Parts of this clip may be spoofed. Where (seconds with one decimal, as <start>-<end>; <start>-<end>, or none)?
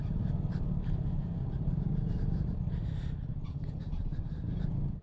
3.3-3.8